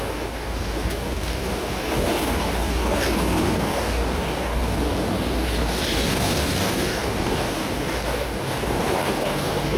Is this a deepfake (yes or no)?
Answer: yes